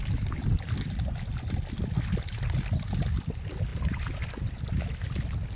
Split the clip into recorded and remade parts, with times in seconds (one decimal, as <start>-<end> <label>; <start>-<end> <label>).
0.0-3.7 recorded; 3.7-4.7 remade; 4.7-5.5 recorded